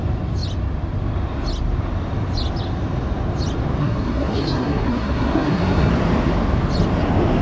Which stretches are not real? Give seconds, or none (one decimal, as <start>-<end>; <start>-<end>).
3.8-5.9